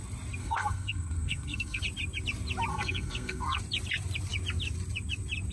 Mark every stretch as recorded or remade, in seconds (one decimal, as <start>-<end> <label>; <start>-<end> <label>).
0.0-0.4 recorded; 0.4-1.8 remade; 1.8-2.7 recorded; 2.7-3.6 remade; 3.6-5.5 recorded